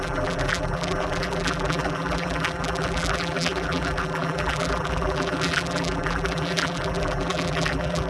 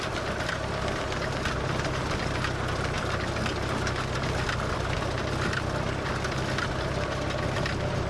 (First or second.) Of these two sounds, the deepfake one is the first